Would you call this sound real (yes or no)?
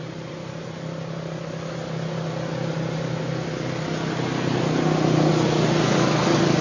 yes